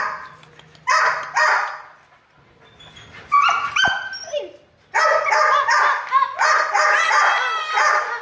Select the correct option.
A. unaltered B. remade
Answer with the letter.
A